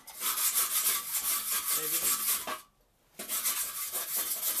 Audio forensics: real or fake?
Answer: real